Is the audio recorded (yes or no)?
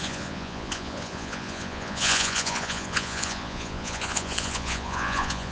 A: no